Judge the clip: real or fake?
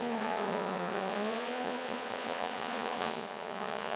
fake